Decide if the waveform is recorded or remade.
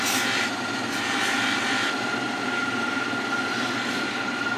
recorded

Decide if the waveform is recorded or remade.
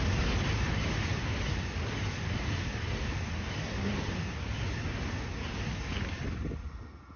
recorded